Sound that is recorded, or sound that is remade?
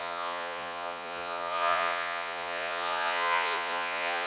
remade